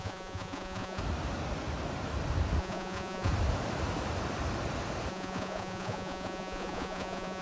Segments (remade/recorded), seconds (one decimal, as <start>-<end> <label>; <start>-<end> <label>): 0.0-1.0 remade; 1.0-2.6 recorded; 2.6-3.3 remade; 3.3-5.1 recorded; 5.1-7.4 remade